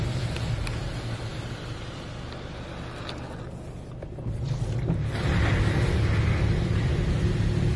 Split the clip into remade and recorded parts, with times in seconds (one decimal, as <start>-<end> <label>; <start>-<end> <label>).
0.0-7.8 recorded